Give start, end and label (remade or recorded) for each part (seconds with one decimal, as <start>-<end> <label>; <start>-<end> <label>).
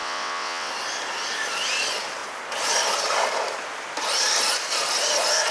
0.0-0.7 remade; 0.7-5.5 recorded